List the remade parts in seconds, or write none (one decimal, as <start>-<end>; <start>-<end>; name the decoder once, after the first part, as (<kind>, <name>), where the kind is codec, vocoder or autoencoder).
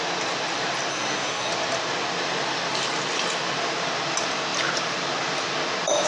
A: 0.9-1.5 (codec, SNAC)